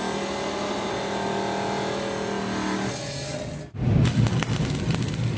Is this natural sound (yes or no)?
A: yes